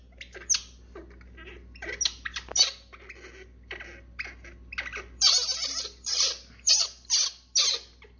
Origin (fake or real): real